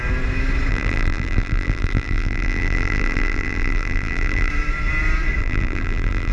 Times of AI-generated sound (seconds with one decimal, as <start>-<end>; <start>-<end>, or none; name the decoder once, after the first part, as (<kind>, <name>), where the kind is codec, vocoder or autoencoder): 0.7-4.5 (vocoder, BigVGAN v2); 5.4-6.3